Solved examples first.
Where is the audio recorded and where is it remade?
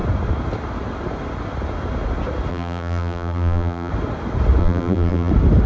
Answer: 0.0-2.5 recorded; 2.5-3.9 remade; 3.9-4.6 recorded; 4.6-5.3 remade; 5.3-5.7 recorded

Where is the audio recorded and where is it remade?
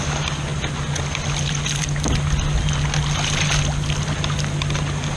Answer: 0.0-5.2 recorded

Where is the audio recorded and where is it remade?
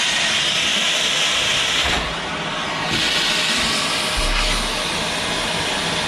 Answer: 0.0-0.7 recorded; 0.7-1.9 remade; 1.9-6.1 recorded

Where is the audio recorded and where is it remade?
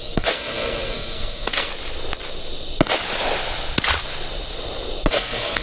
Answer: 0.0-1.7 remade; 1.7-5.1 recorded; 5.1-5.6 remade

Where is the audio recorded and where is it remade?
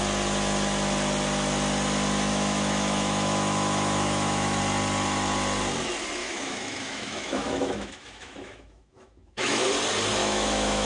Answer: 0.0-2.3 recorded; 2.3-4.6 remade; 4.6-6.2 recorded; 6.2-9.7 remade; 9.7-10.2 recorded; 10.2-10.9 remade